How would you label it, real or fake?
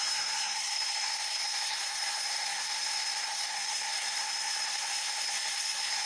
fake